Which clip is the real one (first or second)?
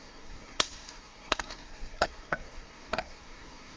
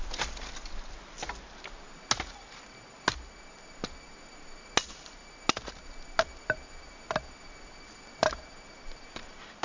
second